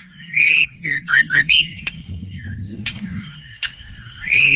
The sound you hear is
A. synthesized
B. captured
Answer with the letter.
A